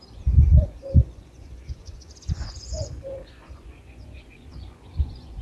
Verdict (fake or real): fake